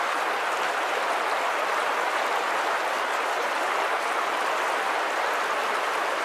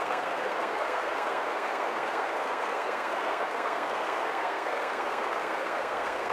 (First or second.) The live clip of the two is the first